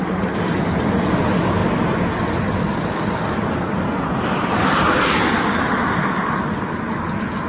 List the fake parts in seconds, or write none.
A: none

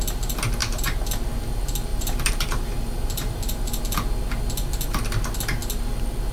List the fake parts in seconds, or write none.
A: 0.6-1.1 (vocoder, BigVGAN v2); 1.9-3.8

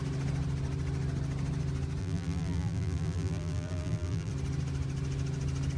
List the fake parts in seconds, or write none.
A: 2.0-4.3 (vocoder, BigVGAN v2)

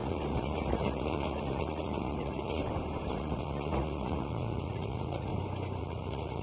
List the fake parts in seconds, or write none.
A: 0.0-2.6 (vocoder, Vocos); 3.1-5.3; 5.8-6.4

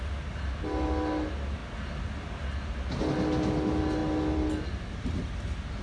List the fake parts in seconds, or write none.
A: none

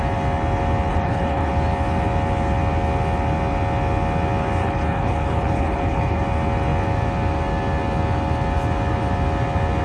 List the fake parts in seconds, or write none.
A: 0.9-1.5 (codec, HILCodec); 4.6-6.2

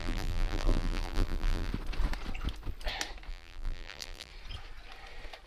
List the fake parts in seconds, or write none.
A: 0.0-1.7 (vocoder, BigVGAN v2); 3.3-4.3